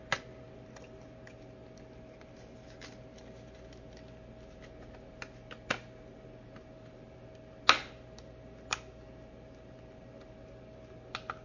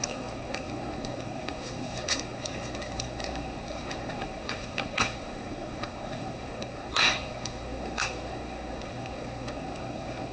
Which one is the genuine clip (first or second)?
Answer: first